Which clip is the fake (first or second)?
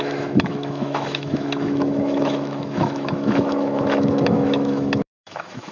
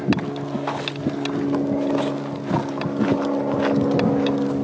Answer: first